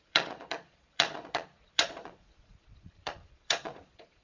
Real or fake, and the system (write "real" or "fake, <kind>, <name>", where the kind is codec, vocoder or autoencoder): fake, vocoder, Vocos